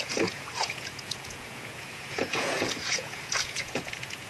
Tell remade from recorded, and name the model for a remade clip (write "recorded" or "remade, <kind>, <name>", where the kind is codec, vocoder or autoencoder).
remade, vocoder, Vocos